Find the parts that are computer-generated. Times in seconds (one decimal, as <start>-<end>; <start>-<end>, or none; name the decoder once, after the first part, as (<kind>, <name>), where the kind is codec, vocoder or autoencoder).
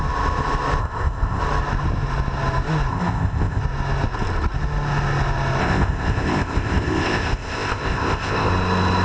0.8-1.4 (codec, ZipCodec); 2.9-3.6; 5.6-8.5